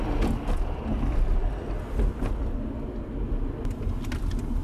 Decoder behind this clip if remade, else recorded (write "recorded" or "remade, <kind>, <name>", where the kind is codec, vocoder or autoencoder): recorded